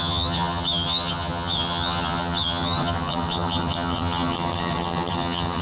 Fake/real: fake